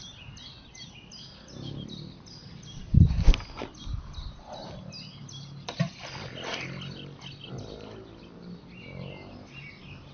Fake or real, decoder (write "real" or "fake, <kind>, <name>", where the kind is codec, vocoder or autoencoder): real